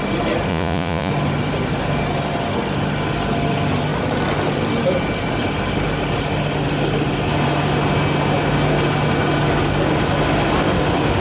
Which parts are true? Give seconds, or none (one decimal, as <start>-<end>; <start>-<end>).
0.0-0.5; 1.1-11.2